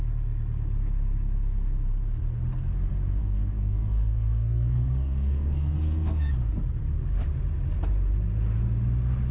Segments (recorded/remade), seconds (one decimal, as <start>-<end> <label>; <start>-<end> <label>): 0.0-3.2 recorded; 3.2-6.3 remade; 6.3-9.3 recorded